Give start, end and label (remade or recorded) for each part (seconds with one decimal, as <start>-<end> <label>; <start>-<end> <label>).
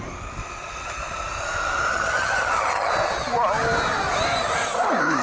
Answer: 0.0-1.9 recorded; 1.9-2.9 remade; 2.9-5.2 recorded